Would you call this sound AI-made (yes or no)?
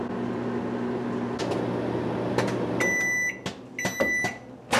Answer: no